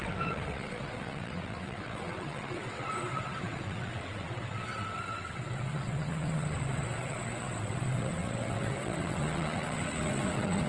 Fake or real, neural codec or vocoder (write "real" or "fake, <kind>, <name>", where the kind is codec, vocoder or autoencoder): fake, vocoder, WaveNeXt